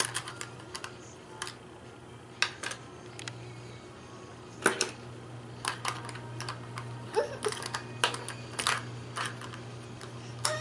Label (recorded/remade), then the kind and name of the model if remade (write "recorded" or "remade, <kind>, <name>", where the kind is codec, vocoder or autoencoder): recorded